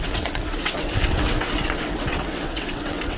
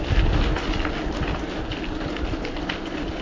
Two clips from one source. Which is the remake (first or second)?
first